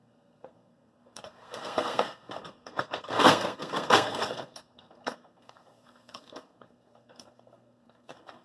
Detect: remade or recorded remade